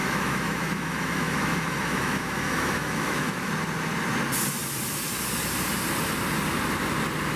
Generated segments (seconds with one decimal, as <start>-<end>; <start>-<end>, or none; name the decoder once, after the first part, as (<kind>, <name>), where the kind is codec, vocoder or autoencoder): 0.0-3.5 (autoencoder, DAC-VAE)